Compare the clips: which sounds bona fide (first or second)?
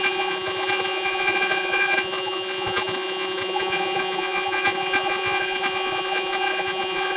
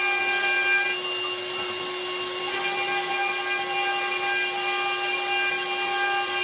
second